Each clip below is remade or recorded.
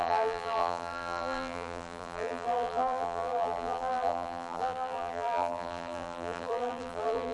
remade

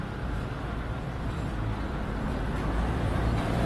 remade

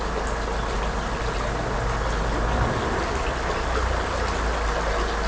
recorded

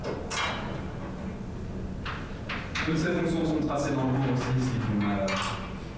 recorded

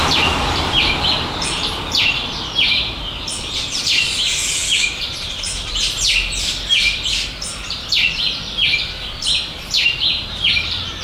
remade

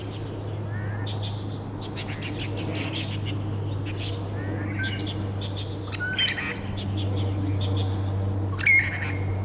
recorded